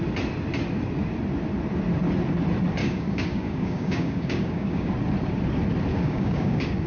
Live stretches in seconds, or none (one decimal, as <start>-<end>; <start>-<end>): 0.0-2.8; 4.9-5.9